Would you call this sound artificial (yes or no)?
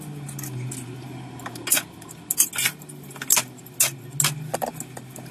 no